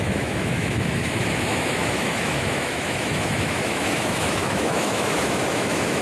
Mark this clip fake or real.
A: fake